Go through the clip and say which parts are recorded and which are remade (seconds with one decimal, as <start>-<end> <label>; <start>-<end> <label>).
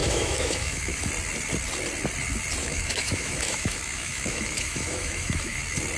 0.0-1.1 remade; 1.1-2.6 recorded; 2.6-5.6 remade; 5.6-6.0 recorded